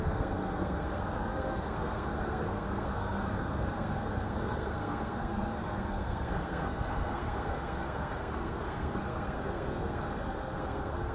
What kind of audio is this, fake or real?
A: fake